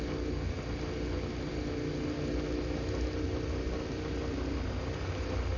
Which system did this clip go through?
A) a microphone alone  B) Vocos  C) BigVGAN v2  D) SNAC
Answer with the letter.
A